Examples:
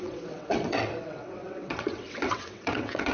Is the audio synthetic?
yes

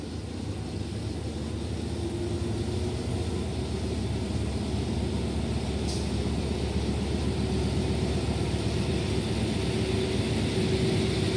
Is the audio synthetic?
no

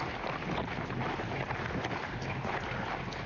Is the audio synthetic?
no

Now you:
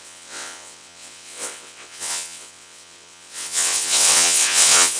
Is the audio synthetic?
yes